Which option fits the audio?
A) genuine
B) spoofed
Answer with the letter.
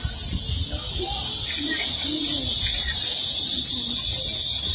A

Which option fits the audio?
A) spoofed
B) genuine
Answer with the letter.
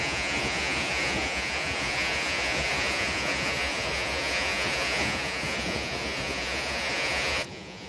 A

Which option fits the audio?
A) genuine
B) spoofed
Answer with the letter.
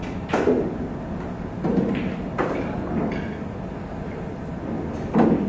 A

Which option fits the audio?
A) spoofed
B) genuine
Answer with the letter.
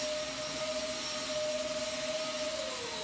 B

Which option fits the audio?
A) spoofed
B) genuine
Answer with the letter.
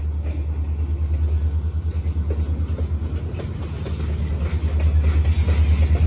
B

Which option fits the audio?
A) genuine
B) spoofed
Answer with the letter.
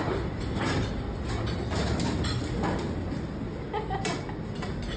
A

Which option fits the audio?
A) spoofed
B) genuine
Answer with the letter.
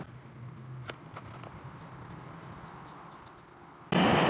B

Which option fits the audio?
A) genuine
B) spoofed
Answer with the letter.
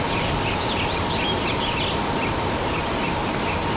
A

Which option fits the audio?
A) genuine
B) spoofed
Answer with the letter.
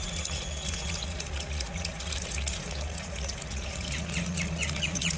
B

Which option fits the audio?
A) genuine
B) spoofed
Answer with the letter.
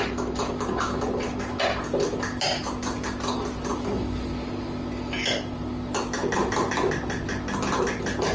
A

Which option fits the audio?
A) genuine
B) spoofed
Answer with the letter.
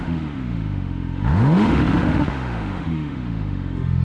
B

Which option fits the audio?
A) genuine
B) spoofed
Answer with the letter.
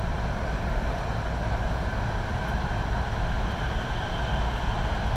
A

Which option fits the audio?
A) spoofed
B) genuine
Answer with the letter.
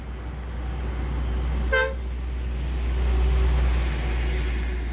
B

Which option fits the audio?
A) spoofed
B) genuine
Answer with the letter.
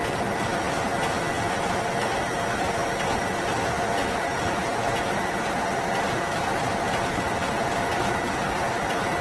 B